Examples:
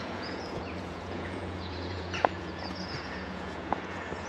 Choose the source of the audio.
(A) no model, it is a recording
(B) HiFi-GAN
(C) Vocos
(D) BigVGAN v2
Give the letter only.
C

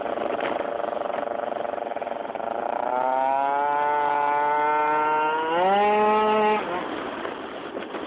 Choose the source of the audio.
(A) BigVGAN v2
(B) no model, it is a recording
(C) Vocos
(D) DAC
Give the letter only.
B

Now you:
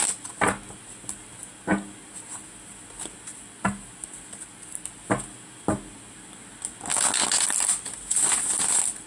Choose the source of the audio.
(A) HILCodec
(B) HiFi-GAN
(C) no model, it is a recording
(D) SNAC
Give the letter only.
C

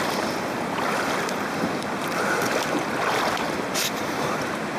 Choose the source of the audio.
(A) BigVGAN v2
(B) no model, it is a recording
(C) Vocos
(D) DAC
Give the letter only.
A